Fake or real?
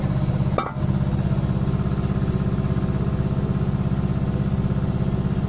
real